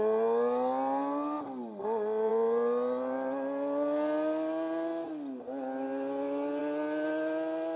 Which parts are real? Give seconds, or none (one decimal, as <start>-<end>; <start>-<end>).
0.0-7.8